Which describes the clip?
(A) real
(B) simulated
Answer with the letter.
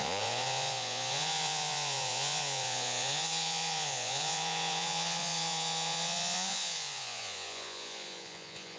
B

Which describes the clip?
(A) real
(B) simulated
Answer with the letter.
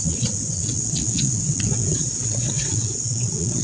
B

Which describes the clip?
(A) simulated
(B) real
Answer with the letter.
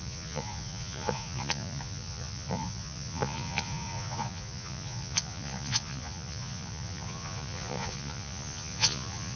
A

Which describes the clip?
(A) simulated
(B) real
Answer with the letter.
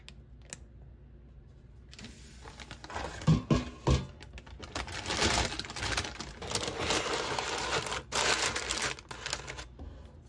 B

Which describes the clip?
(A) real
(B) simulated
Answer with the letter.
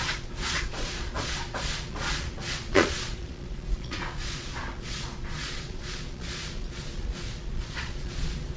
B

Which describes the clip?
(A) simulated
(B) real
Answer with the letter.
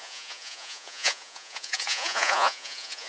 A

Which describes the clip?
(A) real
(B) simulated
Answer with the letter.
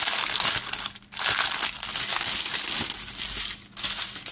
A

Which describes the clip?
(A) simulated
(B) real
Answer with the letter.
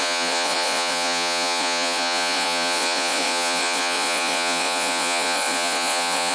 A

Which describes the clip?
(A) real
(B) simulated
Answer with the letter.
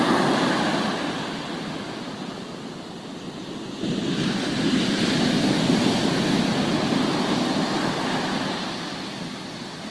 A